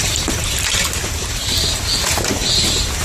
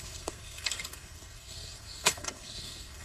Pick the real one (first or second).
first